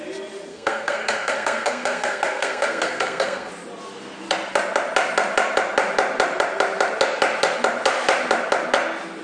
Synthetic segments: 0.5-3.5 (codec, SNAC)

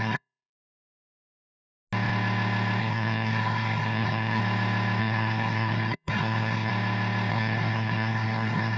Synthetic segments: 0.0-1.2 (codec, SNAC); 2.8-4.4; 5.0-6.7; 7.3-8.8

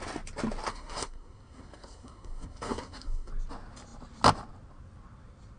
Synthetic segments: 0.7-3.3 (codec, SNAC)

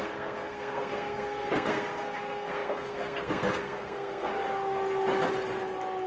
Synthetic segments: 0.0-4.3 (codec, SNAC)

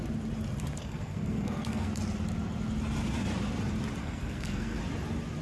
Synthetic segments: 0.8-1.9 (codec, SNAC); 4.0-4.8